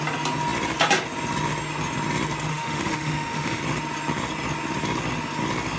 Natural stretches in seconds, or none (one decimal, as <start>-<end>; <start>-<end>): 0.0-2.5; 3.6-5.8